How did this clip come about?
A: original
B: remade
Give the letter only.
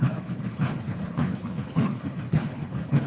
B